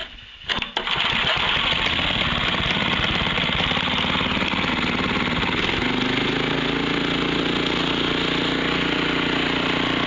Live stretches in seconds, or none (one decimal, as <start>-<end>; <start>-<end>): 4.7-10.1